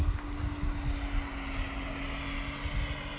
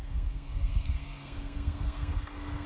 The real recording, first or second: first